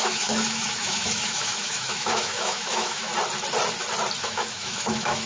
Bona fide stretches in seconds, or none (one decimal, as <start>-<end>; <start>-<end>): 3.1-4.2